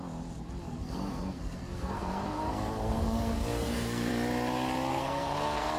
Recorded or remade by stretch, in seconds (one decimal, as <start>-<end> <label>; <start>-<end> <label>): 0.0-0.6 recorded; 0.6-4.1 remade; 4.1-4.9 recorded; 4.9-5.8 remade